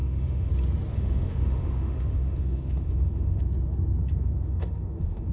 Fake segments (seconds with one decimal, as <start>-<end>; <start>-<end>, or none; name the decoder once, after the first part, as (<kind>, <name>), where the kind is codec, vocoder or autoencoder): 0.0-0.5 (autoencoder, DAC-VAE); 0.9-3.4; 4.1-5.3